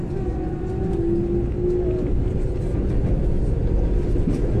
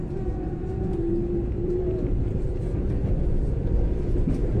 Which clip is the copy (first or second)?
second